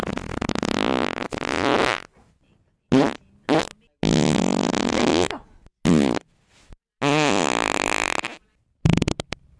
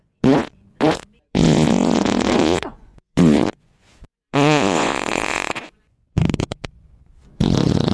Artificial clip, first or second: second